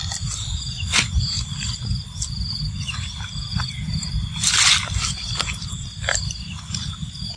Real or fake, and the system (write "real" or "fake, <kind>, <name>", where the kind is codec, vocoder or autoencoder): real